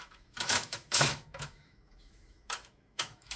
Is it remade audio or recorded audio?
remade